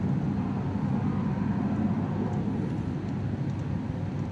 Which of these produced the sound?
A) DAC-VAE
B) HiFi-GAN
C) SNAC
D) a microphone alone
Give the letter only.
D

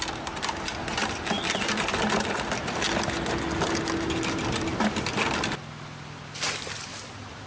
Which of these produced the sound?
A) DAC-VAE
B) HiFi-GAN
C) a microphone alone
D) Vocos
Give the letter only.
C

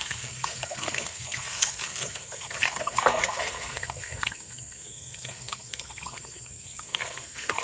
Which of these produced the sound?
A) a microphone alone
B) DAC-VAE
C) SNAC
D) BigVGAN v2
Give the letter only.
C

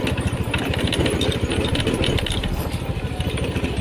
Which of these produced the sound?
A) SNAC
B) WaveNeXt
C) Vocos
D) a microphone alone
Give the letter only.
D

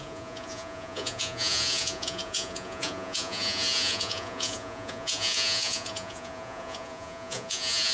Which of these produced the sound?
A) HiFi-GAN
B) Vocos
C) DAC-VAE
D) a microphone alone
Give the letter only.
B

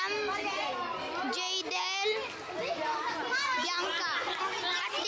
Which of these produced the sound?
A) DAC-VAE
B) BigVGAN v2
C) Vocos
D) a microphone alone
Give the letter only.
D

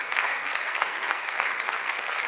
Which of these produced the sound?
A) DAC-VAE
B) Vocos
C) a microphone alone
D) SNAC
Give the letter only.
D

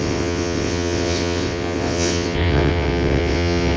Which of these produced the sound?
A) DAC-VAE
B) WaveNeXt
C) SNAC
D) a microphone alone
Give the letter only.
B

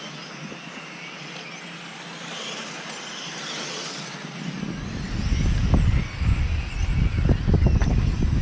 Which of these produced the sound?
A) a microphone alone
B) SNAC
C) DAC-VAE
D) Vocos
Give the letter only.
A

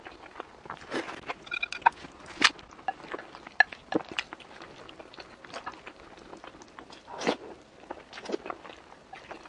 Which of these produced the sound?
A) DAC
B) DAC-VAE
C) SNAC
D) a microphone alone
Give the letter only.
D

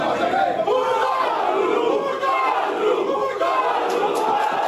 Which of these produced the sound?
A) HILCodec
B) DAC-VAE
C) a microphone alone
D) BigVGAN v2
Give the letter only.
C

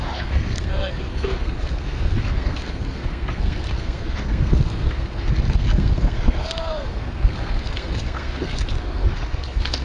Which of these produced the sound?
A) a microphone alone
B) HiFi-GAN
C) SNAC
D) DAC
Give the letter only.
C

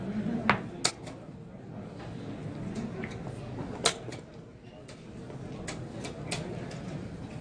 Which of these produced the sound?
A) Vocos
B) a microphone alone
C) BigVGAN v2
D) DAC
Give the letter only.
B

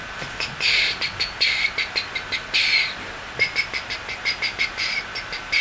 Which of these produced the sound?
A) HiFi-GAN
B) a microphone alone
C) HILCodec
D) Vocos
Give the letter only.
B